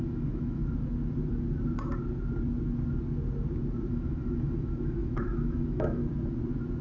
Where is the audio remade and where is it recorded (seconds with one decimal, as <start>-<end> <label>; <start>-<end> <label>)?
0.0-0.6 remade; 0.6-3.9 recorded; 3.9-6.0 remade; 6.0-6.8 recorded